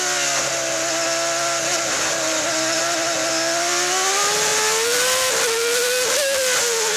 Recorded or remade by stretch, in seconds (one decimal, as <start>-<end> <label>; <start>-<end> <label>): 0.0-7.0 recorded